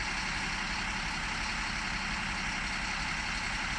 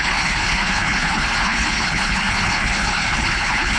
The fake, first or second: second